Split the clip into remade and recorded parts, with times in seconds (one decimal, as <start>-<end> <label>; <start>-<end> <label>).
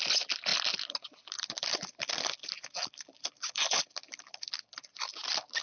0.0-5.6 recorded